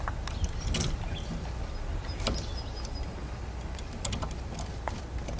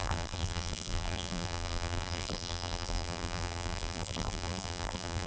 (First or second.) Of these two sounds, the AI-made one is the second